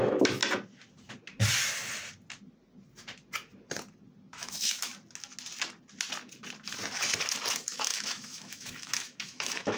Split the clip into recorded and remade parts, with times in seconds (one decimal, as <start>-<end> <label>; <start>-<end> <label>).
0.0-0.4 remade; 0.4-4.3 recorded; 4.3-4.9 remade; 4.9-7.5 recorded; 7.5-9.8 remade